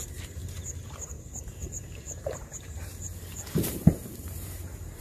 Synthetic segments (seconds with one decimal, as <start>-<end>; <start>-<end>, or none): 0.0-2.9; 3.6-5.0